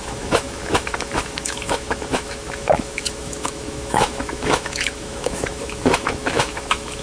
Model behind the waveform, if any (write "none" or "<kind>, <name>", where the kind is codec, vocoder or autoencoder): autoencoder, DAC-VAE